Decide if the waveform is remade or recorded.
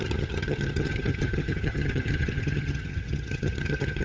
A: remade